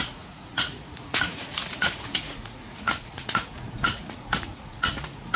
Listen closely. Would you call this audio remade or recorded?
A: remade